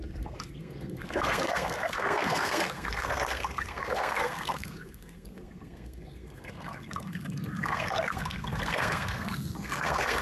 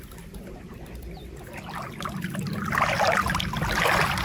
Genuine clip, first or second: second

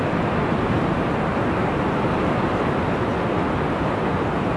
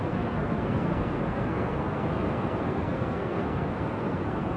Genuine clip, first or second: first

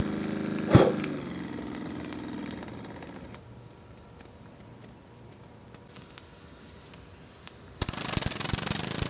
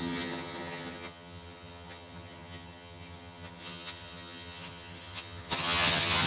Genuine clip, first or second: first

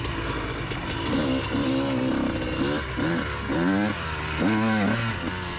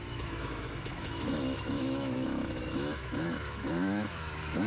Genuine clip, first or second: first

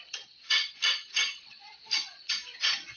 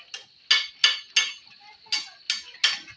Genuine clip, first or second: second